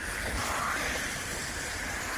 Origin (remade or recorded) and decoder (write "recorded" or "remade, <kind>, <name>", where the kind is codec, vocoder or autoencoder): remade, vocoder, BigVGAN v2